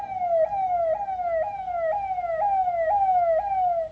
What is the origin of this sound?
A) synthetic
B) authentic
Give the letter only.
B